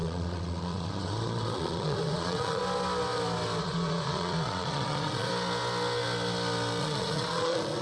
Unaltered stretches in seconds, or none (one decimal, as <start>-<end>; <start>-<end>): 2.6-3.6; 5.3-6.8